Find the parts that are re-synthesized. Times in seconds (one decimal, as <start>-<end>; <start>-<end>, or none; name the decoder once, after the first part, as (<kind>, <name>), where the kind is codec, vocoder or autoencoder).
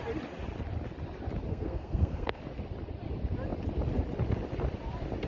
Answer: 1.5-2.4 (codec, SNAC)